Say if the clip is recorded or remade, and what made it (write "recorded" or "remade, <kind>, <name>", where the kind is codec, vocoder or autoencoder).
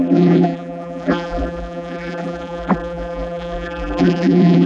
remade, vocoder, BigVGAN v2